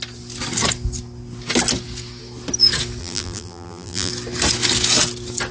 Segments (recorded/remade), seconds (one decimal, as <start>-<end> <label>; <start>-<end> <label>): 0.0-3.0 recorded; 3.0-4.1 remade; 4.1-5.5 recorded